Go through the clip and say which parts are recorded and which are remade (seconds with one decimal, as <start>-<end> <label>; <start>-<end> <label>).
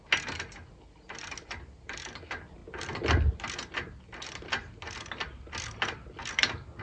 0.0-6.8 recorded